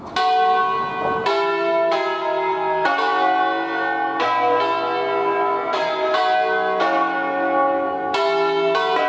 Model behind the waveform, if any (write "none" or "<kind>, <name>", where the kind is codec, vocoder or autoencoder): none